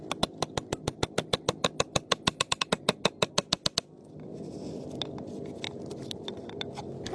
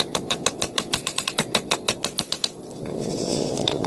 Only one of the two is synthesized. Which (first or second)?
second